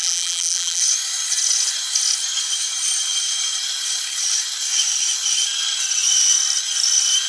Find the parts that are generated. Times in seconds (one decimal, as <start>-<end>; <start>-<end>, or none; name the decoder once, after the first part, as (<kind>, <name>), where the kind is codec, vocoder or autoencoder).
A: 0.0-0.8 (vocoder, BigVGAN v2)